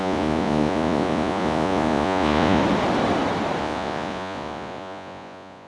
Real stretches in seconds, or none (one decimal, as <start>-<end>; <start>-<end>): 2.6-3.6

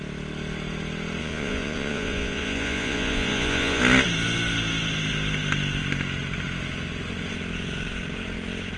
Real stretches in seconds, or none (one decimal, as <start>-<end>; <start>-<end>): 0.0-1.2; 3.8-8.8

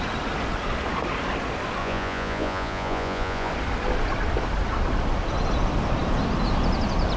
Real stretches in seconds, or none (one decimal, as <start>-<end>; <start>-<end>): 0.0-1.8; 3.5-7.2